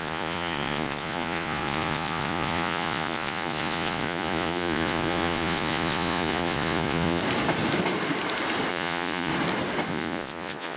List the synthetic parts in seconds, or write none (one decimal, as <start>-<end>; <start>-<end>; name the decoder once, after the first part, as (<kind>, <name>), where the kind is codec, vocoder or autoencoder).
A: 0.0-7.2 (vocoder, Vocos); 8.7-9.3; 9.9-10.8

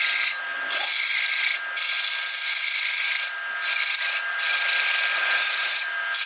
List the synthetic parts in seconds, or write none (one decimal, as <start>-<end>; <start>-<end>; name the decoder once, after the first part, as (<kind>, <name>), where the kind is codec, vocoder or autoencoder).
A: 5.1-5.8 (vocoder, Vocos)

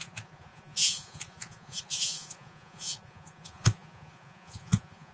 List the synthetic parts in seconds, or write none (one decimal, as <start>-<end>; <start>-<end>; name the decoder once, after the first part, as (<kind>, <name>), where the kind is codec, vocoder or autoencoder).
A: 0.0-5.1 (vocoder, Vocos)

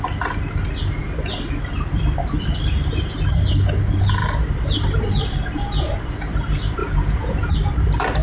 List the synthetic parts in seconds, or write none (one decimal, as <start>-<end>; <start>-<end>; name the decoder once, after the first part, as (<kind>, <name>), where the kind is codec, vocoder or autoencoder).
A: 6.8-7.5 (vocoder, Vocos)

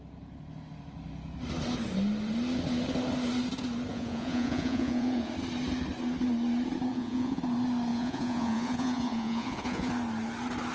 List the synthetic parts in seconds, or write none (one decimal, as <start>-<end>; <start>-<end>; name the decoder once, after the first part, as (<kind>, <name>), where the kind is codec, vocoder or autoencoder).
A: 3.9-5.3 (vocoder, Vocos); 6.9-7.4; 7.9-9.9

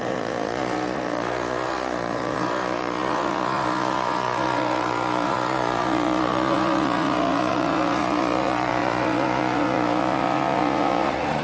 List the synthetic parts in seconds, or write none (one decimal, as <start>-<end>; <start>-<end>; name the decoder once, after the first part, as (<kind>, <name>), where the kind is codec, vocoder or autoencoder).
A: 0.0-11.4 (vocoder, Vocos)

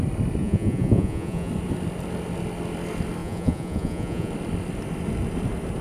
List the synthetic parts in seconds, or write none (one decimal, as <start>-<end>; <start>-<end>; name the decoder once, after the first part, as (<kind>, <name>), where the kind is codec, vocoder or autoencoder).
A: 0.4-1.5 (vocoder, Vocos); 3.2-4.3

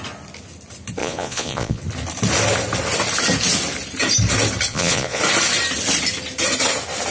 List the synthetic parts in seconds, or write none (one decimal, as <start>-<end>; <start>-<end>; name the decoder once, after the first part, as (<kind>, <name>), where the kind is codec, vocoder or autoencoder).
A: 1.0-1.8 (vocoder, Vocos); 4.7-5.2